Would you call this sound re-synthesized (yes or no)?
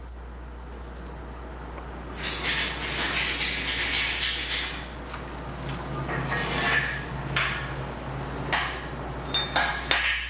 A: no